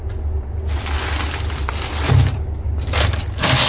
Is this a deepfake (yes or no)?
no